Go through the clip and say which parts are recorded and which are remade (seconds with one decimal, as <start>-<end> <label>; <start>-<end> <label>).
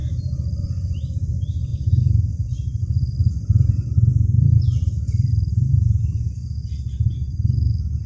0.0-8.1 recorded